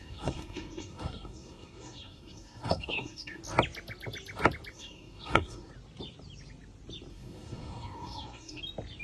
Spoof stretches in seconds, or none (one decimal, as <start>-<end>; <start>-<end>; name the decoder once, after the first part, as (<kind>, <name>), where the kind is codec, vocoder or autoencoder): 0.0-3.4 (codec, SNAC); 4.7-5.7; 7.1-8.6